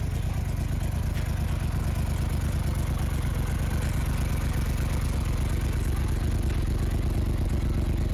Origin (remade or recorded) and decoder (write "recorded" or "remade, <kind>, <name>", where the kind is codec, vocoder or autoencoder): recorded